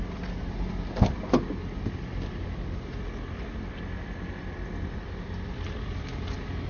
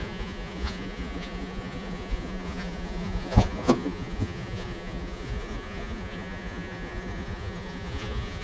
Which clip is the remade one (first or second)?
second